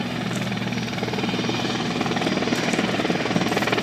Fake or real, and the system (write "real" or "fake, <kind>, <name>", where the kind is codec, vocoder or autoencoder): fake, vocoder, BigVGAN v2